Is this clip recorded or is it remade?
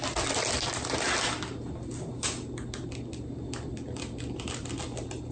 recorded